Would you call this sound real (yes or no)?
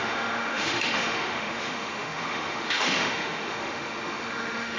no